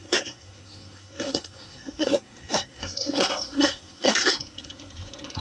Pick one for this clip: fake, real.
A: fake